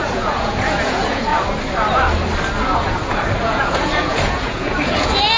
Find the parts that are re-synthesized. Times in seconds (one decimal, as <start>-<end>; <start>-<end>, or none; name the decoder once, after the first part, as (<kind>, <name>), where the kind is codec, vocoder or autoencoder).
0.0-1.3 (vocoder, Vocos); 3.4-5.4